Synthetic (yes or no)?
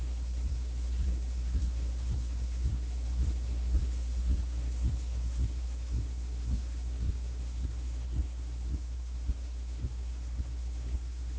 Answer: yes